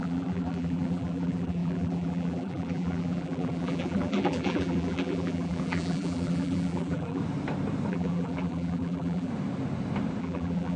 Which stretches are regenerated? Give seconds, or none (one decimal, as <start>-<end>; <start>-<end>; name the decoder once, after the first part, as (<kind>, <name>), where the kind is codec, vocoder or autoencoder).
0.0-7.2 (vocoder, BigVGAN v2); 7.9-9.3; 10.2-10.8